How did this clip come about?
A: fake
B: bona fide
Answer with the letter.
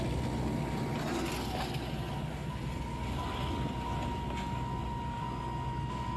B